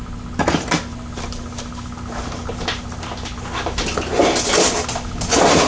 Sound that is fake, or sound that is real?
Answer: real